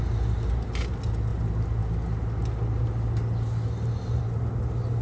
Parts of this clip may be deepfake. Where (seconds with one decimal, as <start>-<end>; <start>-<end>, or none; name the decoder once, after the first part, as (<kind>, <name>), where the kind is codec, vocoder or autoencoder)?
none